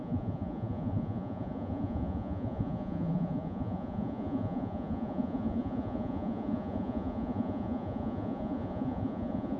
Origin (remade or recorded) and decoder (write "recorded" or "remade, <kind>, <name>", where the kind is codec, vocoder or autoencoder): remade, vocoder, Vocos